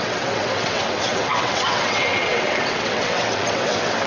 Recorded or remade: remade